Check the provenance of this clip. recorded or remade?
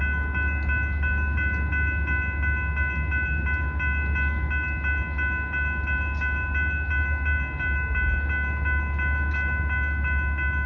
recorded